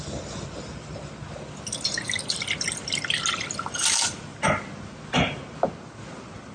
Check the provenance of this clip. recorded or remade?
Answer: recorded